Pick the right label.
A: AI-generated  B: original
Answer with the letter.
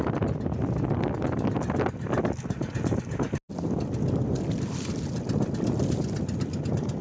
B